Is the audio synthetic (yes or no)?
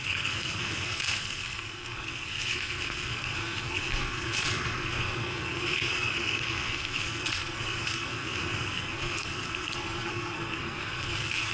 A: yes